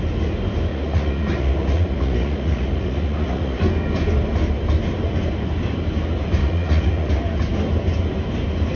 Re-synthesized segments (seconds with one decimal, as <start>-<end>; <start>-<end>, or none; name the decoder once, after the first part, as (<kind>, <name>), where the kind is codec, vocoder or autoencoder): 0.7-3.6 (vocoder, Vocos); 6.4-7.1

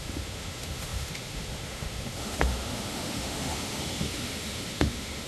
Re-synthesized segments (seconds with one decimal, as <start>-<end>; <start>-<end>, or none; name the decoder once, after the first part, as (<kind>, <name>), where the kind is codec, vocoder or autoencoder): 0.0-5.3 (autoencoder, DAC-VAE)

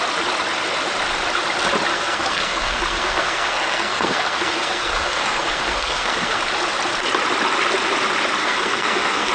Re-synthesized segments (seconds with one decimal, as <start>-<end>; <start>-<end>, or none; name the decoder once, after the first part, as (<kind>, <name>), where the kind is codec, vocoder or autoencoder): 1.9-6.4 (codec, SNAC); 8.4-9.3